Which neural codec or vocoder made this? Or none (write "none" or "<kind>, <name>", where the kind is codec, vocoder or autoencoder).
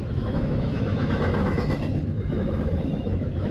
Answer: autoencoder, DAC-VAE